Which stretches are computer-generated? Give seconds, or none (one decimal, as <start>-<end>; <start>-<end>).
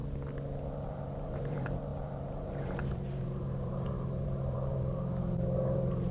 0.7-6.1